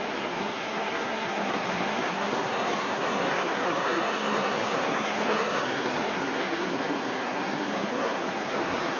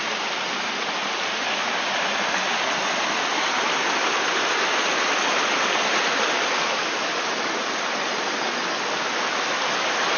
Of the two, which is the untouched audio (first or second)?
second